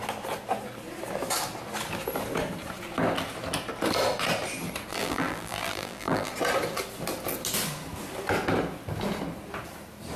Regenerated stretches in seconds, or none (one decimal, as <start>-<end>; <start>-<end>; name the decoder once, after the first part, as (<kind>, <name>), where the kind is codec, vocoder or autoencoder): 4.9-6.3 (vocoder, BigVGAN v2)